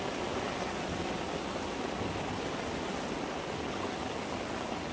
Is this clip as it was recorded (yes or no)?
yes